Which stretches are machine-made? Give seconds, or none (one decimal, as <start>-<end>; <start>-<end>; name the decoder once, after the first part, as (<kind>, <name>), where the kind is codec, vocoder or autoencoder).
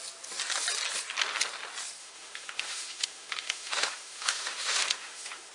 2.0-5.5 (autoencoder, DAC-VAE)